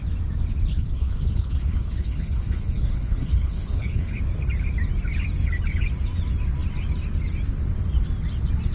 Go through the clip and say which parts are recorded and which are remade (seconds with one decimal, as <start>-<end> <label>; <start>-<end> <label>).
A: 0.0-0.7 recorded; 0.7-4.2 remade; 4.2-8.7 recorded